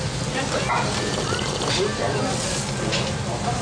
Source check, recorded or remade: recorded